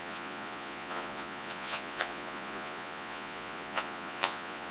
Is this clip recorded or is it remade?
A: remade